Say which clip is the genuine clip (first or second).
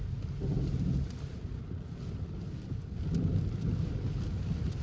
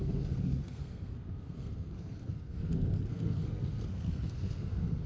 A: first